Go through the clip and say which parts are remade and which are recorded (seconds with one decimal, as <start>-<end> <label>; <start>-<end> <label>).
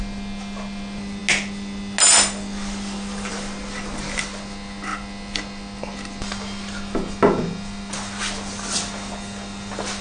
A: 0.0-10.0 recorded